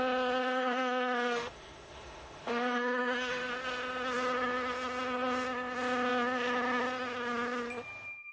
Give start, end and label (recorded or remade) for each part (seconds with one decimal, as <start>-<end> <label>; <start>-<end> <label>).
0.0-0.4 recorded; 0.4-3.5 remade; 3.5-8.3 recorded

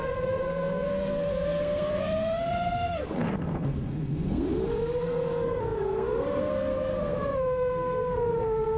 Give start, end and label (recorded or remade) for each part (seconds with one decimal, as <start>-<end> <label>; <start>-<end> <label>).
0.0-8.8 remade